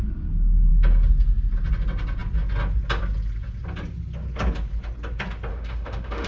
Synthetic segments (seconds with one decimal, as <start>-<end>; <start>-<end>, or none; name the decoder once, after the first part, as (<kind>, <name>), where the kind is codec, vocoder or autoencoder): 5.5-6.3 (autoencoder, DAC-VAE)